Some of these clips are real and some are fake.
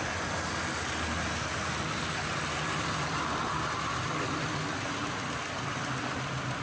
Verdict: real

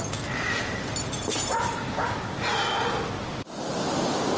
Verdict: real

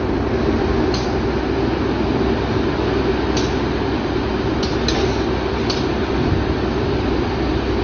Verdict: real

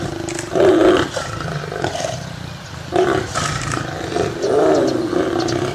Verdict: real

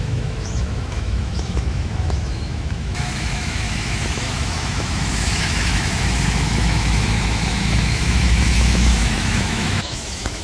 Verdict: fake